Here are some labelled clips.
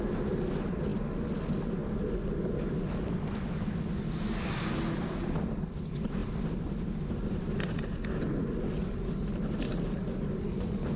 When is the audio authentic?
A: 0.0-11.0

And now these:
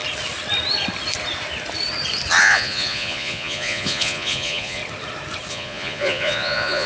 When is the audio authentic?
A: 0.0-2.4; 4.8-5.5